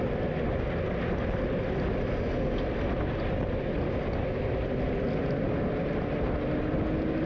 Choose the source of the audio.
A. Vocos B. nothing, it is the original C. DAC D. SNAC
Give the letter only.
B